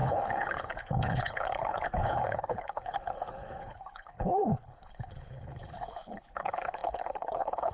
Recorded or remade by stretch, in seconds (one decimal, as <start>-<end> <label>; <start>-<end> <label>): 0.0-7.7 remade